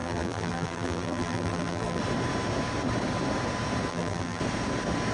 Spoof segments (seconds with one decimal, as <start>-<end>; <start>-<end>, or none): 0.0-2.0; 3.9-4.4